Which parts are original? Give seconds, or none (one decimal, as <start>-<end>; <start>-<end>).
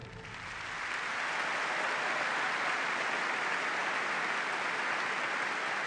0.0-5.9